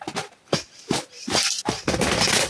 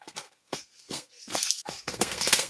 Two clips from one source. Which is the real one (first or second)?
first